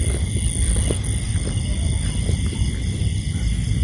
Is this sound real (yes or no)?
yes